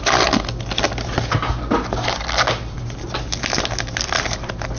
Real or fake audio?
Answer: real